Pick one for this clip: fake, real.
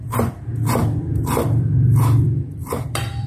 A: fake